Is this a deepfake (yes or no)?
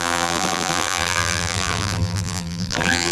yes